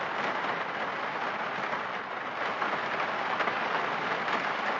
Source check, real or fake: real